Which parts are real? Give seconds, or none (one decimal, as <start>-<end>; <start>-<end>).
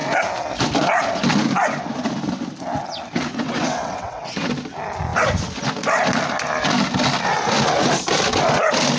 0.0-3.3; 4.5-9.0